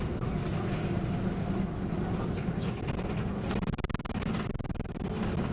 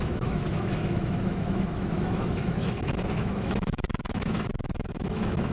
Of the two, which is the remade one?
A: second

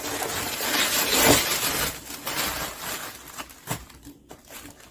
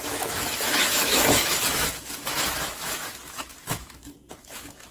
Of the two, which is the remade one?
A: second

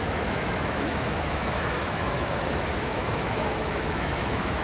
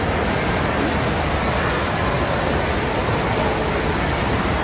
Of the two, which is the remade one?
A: first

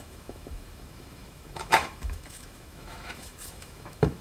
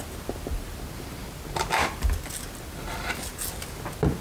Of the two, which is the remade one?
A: first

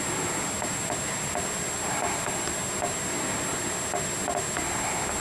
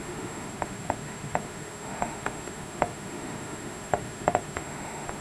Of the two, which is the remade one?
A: second